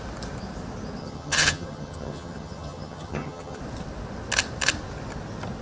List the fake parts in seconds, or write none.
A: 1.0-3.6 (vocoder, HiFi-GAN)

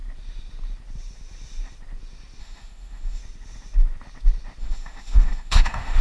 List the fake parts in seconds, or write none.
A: 2.4-3.2 (autoencoder, DAC-VAE); 4.6-6.0

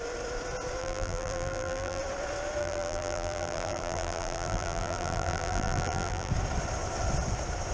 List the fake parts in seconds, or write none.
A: 0.8-2.0 (vocoder, BigVGAN v2); 2.6-6.3